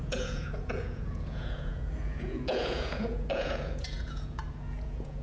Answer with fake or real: fake